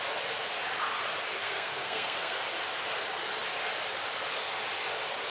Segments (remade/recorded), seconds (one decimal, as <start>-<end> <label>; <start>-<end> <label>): 0.0-1.4 recorded; 1.4-2.4 remade; 2.4-5.3 recorded